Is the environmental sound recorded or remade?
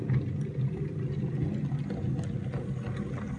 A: recorded